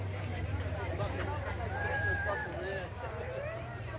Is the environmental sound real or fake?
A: fake